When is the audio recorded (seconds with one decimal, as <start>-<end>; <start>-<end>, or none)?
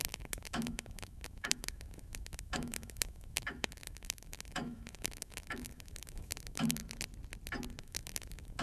6.8-7.8